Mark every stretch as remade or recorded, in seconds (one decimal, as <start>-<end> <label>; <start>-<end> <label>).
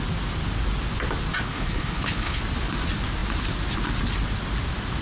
0.0-1.5 recorded; 1.5-2.4 remade; 2.4-5.0 recorded